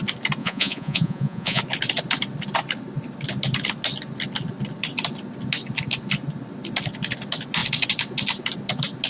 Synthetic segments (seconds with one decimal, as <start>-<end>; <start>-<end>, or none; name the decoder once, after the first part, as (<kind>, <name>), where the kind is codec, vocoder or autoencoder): 0.4-1.6 (vocoder, Vocos)